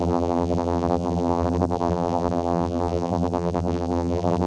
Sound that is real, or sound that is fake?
fake